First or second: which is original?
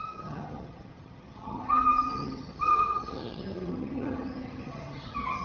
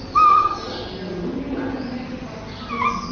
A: second